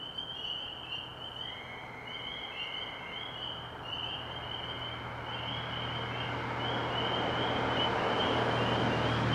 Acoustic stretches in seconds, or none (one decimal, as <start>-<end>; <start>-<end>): 0.0-9.3